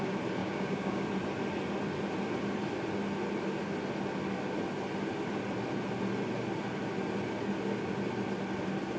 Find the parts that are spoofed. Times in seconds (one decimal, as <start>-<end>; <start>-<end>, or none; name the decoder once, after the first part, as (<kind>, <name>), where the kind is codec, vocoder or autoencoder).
0.4-1.0 (codec, DAC)